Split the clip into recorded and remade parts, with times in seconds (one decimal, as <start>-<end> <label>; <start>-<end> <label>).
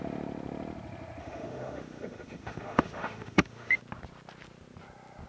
0.0-1.2 recorded; 1.2-3.8 remade; 3.8-5.3 recorded